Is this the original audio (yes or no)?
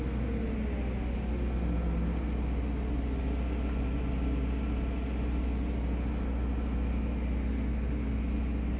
yes